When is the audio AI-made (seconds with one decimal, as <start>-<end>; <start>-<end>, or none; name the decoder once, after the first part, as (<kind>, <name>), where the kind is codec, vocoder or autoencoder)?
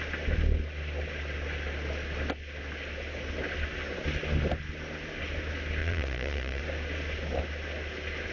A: 5.8-6.6 (vocoder, Vocos)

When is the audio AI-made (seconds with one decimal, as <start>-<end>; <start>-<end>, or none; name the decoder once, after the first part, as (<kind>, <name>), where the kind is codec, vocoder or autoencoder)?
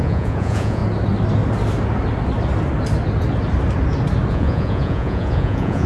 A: 0.0-0.8 (vocoder, Vocos); 4.3-5.9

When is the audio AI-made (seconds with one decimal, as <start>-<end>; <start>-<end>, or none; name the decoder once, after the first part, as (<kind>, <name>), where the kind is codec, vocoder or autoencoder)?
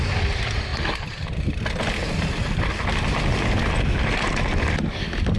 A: none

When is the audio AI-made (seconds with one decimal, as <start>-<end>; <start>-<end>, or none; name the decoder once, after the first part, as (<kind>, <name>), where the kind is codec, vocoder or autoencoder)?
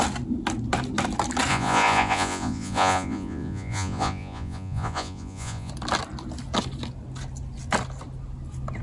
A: 1.5-5.7 (vocoder, Vocos)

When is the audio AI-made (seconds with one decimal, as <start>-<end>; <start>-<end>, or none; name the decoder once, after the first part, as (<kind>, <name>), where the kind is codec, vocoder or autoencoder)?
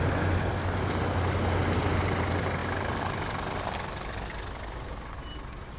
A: none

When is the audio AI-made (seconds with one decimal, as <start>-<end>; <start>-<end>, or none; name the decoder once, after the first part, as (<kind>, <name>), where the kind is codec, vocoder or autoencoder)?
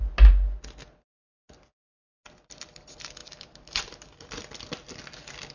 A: none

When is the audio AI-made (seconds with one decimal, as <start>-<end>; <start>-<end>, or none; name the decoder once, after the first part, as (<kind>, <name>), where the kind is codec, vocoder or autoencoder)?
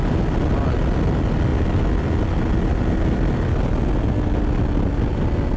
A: 1.5-3.8 (vocoder, BigVGAN v2)